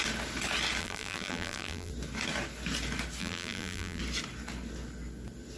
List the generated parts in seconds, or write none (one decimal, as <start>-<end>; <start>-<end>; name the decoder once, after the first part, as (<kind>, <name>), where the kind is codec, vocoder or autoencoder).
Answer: 0.8-1.9 (vocoder, BigVGAN v2); 3.2-4.0